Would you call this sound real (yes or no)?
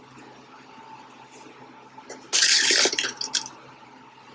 yes